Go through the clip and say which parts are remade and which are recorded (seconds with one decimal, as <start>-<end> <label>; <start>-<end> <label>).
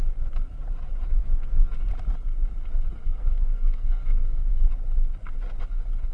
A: 0.0-1.2 recorded; 1.2-1.9 remade; 1.9-2.9 recorded; 2.9-4.5 remade; 4.5-6.1 recorded